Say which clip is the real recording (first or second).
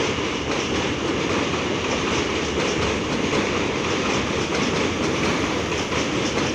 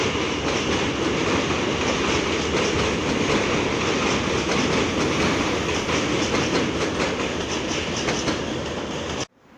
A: second